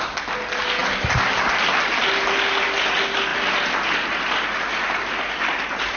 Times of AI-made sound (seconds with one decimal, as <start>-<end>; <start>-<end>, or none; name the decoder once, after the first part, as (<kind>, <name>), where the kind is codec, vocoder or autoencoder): none